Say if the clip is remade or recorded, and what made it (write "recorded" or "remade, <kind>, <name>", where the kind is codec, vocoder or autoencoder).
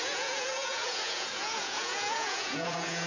remade, vocoder, Vocos